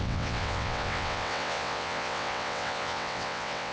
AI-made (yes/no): yes